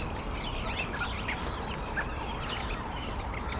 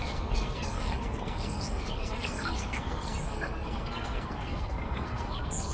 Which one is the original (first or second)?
first